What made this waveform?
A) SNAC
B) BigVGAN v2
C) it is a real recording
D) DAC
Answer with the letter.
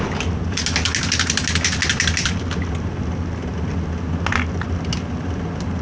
C